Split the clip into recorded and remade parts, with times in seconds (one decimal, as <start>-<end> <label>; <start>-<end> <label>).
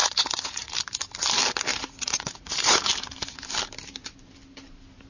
0.0-0.7 remade; 0.7-1.7 recorded; 1.7-2.9 remade; 2.9-5.1 recorded